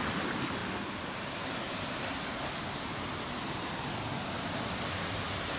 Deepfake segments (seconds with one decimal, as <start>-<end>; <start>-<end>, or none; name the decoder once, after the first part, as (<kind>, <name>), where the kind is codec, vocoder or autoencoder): none